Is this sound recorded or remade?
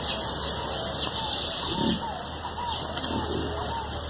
recorded